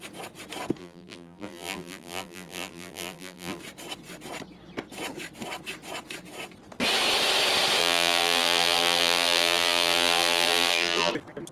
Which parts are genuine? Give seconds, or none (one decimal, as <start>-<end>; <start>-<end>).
0.0-0.8; 3.6-7.8; 11.1-11.5